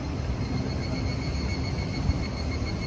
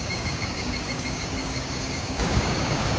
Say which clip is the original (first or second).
first